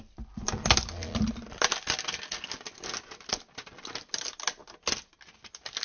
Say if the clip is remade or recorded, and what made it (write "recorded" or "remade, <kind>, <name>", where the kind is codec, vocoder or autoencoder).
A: recorded